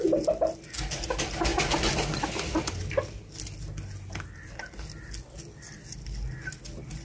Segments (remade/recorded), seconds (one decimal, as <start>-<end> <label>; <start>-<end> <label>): 0.0-7.0 recorded

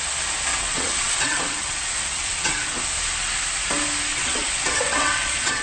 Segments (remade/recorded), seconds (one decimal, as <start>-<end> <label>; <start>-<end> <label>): 0.0-0.5 recorded; 0.5-2.8 remade; 2.8-4.1 recorded; 4.1-5.6 remade

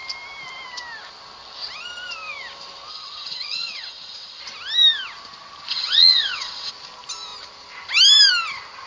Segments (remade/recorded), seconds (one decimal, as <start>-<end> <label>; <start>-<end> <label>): 0.0-2.9 recorded; 2.9-4.4 remade; 4.4-5.7 recorded; 5.7-6.7 remade; 6.7-8.9 recorded

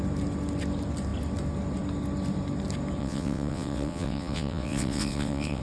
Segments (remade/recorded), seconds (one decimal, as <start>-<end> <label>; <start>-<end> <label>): 0.0-3.0 recorded; 3.0-5.6 remade

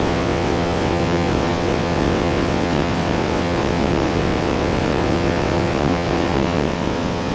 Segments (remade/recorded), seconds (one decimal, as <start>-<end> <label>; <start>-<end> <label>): 0.0-7.3 remade

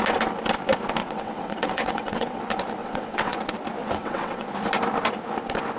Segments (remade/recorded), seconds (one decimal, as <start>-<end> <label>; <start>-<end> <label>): 0.0-1.0 recorded; 1.0-2.4 remade; 2.4-2.8 recorded; 2.8-3.4 remade; 3.4-3.8 recorded; 3.8-4.5 remade; 4.5-5.8 recorded